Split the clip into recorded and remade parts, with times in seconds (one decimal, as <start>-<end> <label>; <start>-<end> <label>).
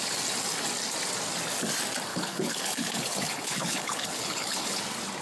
0.0-2.1 recorded; 2.1-4.8 remade; 4.8-5.2 recorded